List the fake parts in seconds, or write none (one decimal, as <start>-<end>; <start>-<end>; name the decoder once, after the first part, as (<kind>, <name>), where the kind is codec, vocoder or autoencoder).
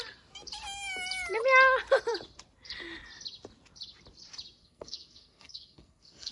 4.6-6.3 (codec, SNAC)